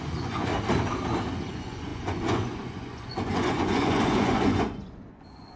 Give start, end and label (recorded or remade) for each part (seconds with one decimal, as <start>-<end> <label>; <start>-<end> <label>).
0.0-0.5 remade; 0.5-1.3 recorded; 1.3-5.6 remade